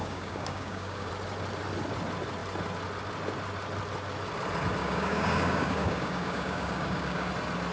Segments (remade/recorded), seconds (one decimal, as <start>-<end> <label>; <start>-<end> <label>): 0.0-1.1 remade; 1.1-4.8 recorded; 4.8-7.3 remade; 7.3-7.7 recorded